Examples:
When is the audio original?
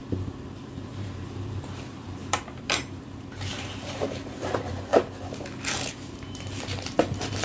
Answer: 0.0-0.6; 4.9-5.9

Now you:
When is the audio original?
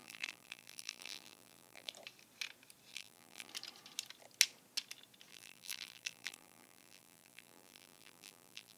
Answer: 1.9-2.9; 3.5-5.3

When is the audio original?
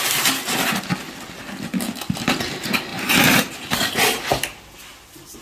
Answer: 0.0-2.9; 3.5-5.4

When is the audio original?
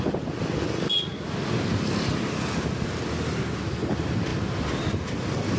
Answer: 0.0-5.6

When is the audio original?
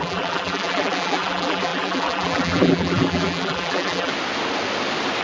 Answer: 4.1-5.2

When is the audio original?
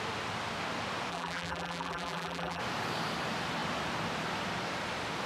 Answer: 0.0-1.1; 2.6-5.3